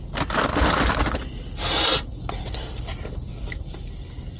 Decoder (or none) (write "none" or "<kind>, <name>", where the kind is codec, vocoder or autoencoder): none